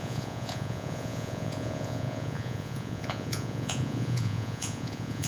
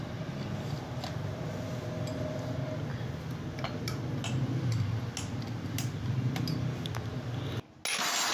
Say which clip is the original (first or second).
second